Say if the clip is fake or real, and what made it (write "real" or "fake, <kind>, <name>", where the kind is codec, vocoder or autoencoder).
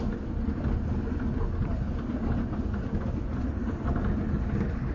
real